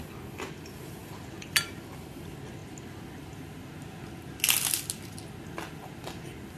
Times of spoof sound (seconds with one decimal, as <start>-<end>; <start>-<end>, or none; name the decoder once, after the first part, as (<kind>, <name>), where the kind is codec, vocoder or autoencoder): 1.0-1.7 (vocoder, BigVGAN v2)